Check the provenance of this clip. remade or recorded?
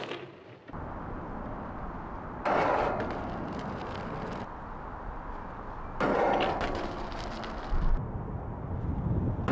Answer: recorded